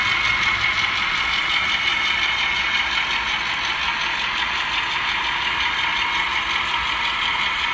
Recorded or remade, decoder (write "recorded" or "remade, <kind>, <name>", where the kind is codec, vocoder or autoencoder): remade, vocoder, BigVGAN v2